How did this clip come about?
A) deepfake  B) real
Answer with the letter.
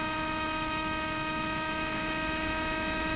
A